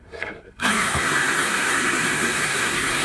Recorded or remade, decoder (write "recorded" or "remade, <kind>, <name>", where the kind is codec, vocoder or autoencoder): remade, codec, SNAC